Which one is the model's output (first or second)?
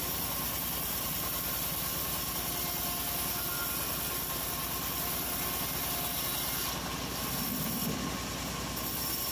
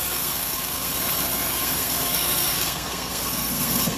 second